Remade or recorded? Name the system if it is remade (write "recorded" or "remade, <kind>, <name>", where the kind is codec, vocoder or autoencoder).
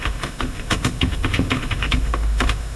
remade, autoencoder, DAC-VAE